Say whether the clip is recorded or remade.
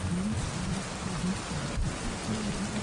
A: recorded